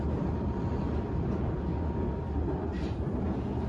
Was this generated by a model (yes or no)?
no